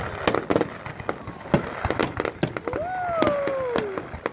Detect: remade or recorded recorded